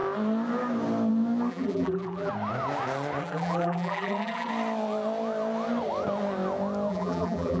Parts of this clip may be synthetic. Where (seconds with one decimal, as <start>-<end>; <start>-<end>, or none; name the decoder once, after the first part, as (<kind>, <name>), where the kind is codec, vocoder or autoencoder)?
1.5-2.3 (vocoder, BigVGAN v2); 3.2-4.5; 6.9-7.6